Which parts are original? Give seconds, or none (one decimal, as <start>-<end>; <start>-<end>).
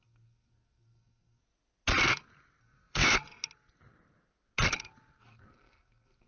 1.4-2.6; 3.0-5.2